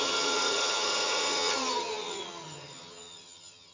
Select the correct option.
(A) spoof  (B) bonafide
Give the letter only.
A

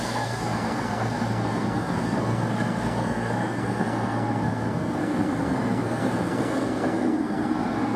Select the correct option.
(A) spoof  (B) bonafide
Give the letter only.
A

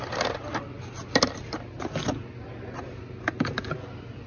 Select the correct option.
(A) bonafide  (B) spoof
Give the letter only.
A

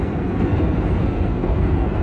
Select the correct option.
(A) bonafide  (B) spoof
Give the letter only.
B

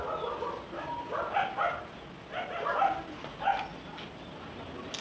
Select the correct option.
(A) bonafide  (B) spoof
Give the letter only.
A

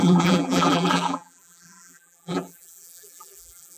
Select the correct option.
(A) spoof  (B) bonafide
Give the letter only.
A